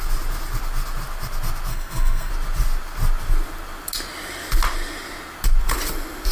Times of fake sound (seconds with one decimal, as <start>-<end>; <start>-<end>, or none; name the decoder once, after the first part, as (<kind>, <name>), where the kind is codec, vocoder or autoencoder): 1.7-2.3 (codec, SNAC)

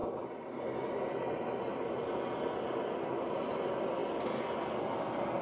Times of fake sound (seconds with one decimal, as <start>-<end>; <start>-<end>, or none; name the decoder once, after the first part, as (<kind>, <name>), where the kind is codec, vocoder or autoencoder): none

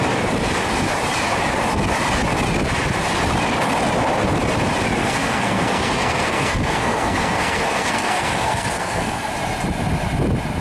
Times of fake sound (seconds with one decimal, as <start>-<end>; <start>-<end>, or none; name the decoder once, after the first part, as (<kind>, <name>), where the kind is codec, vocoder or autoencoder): 5.0-9.3 (codec, SNAC)